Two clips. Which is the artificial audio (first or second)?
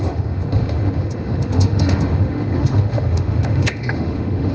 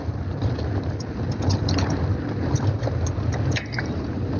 first